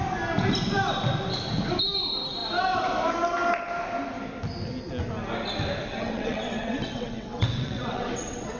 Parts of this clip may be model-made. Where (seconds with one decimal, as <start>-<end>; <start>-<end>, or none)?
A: 5.9-8.6